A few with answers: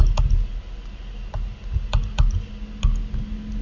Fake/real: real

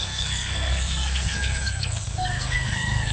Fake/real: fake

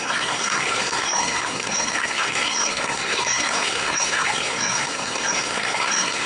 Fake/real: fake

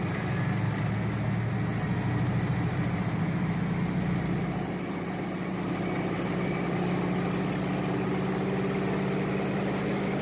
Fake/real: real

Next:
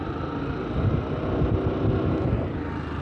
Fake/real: real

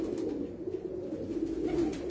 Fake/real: real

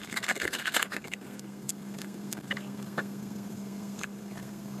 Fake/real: fake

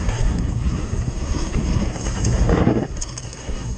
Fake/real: fake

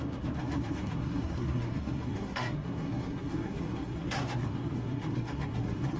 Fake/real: fake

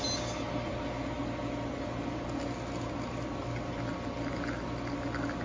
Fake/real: real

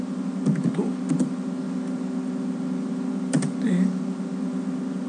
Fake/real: real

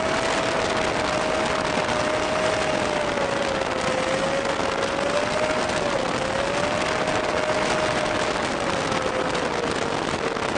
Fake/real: real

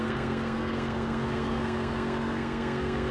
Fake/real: fake